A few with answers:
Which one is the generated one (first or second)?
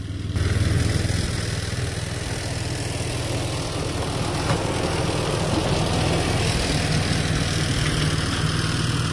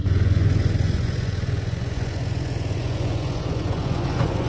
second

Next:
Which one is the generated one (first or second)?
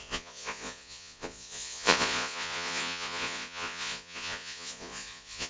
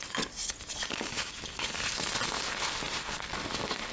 first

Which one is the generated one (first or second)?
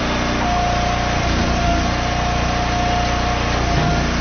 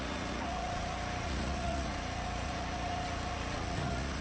second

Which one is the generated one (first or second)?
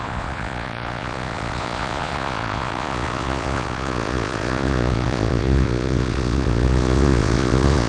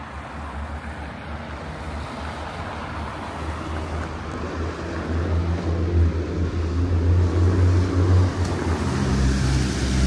first